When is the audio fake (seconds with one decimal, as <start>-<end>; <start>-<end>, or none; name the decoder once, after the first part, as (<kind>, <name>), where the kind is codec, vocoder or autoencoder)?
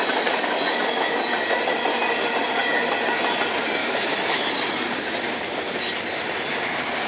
3.8-4.5 (autoencoder, DAC-VAE)